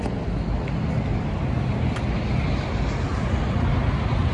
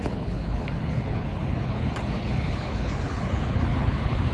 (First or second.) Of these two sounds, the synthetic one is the second